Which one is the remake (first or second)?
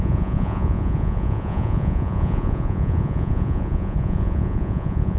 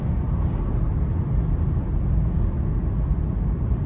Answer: first